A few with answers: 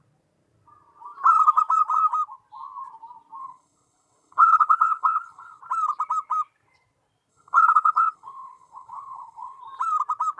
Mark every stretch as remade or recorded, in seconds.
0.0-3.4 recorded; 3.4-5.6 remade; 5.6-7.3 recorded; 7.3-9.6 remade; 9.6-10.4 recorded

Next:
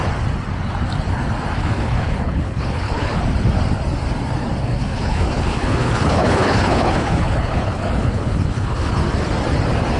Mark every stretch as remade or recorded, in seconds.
0.0-1.6 recorded; 1.6-3.2 remade; 3.2-4.6 recorded; 4.6-9.0 remade; 9.0-10.0 recorded

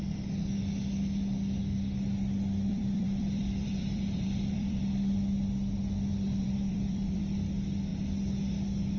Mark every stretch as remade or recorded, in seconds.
0.0-2.7 recorded; 2.7-4.8 remade; 4.8-6.1 recorded; 6.1-7.2 remade; 7.2-9.0 recorded